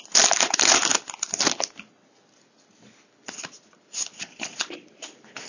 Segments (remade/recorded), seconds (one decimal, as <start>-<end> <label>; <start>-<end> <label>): 0.0-5.5 recorded

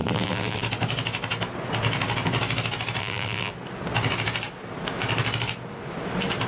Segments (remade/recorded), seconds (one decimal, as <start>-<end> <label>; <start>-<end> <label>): 0.0-0.6 remade; 0.6-3.0 recorded; 3.0-3.5 remade; 3.5-6.5 recorded

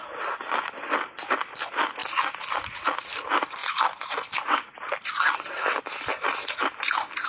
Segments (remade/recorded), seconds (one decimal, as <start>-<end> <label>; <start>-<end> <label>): 0.0-7.3 recorded

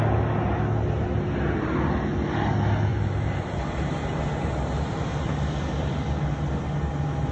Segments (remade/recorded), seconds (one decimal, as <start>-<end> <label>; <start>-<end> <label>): 0.0-2.9 recorded; 2.9-4.2 remade; 4.2-7.3 recorded

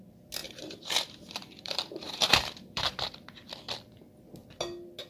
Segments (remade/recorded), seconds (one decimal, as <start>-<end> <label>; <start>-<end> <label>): 0.0-0.4 recorded; 0.4-3.5 remade; 3.5-5.1 recorded

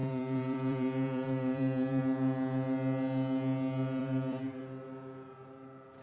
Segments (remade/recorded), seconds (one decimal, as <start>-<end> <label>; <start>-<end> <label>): 0.0-2.0 remade; 2.0-4.0 recorded; 4.0-4.6 remade; 4.6-6.0 recorded

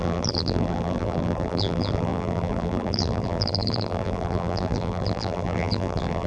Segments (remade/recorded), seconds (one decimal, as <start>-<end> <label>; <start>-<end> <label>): 0.0-6.3 remade

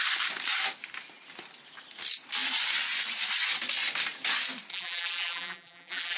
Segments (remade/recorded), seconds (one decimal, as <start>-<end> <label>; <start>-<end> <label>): 0.0-4.7 recorded; 4.7-6.2 remade